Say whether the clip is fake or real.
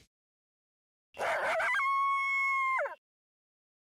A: real